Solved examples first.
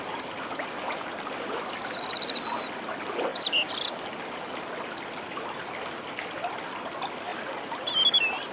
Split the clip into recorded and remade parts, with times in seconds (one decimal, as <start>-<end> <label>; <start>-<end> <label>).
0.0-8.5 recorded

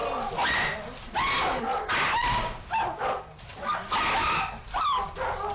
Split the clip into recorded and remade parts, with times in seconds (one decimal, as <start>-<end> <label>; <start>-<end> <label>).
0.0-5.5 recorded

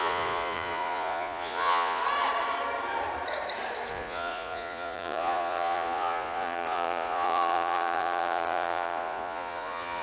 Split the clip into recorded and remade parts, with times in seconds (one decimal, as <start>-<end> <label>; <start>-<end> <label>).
0.0-2.0 remade; 2.0-3.9 recorded; 3.9-10.0 remade

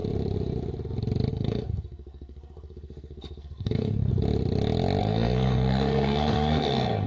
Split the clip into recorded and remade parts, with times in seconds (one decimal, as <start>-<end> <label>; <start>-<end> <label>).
0.0-1.3 recorded; 1.3-4.1 remade; 4.1-5.0 recorded; 5.0-7.1 remade

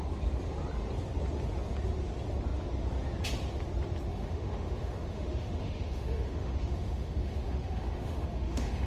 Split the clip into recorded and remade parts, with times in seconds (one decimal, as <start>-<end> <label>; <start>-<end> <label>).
0.0-4.1 recorded; 4.1-8.9 remade